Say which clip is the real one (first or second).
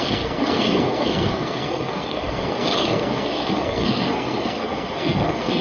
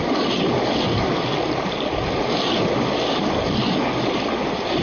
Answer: second